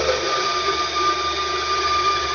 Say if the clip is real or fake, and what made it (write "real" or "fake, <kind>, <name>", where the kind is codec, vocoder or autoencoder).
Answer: real